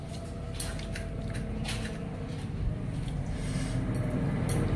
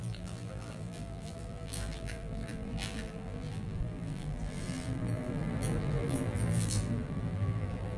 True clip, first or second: first